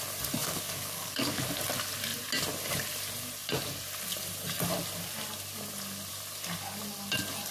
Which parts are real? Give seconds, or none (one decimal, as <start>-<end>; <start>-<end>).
0.0-0.4; 1.4-7.5